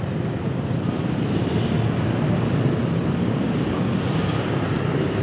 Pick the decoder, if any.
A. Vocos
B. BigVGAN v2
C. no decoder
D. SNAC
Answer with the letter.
C